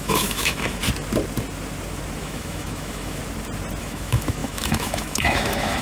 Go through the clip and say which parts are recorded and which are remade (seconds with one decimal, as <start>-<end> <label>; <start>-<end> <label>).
0.0-0.8 remade; 0.8-2.2 recorded; 2.2-3.2 remade; 3.2-3.8 recorded; 3.8-5.8 remade